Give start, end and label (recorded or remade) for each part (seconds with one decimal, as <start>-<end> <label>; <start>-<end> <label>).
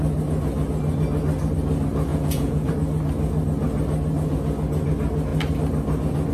0.0-2.1 recorded; 2.1-2.7 remade; 2.7-6.3 recorded